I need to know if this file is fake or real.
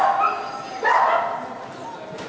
real